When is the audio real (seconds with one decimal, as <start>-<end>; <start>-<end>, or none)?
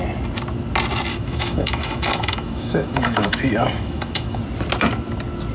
0.0-1.1; 4.4-5.5